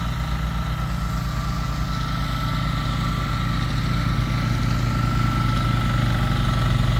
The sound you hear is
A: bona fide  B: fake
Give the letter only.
A